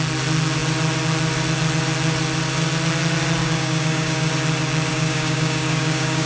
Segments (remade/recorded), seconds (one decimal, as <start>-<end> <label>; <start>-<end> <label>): 0.0-3.4 recorded; 3.4-4.3 remade; 4.3-4.9 recorded; 4.9-6.3 remade